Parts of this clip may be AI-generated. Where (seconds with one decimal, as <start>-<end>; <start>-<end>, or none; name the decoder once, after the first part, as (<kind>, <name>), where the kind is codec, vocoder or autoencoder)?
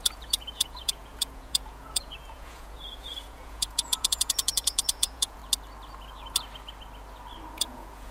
0.0-5.4 (vocoder, Vocos); 7.5-8.1